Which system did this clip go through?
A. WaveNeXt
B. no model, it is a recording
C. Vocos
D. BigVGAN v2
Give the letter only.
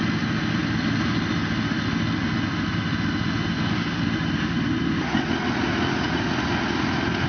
B